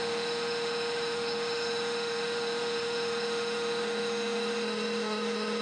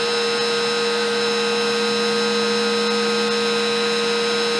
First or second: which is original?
second